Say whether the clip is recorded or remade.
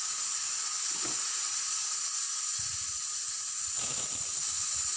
recorded